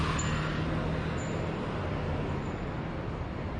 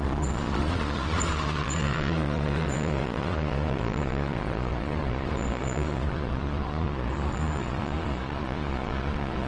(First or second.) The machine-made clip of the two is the second